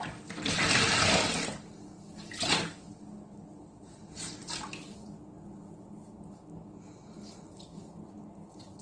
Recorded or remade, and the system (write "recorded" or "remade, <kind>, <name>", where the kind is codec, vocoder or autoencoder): recorded